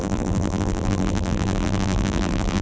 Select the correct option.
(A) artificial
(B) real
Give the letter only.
A